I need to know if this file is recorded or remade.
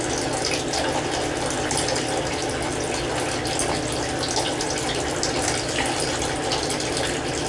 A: recorded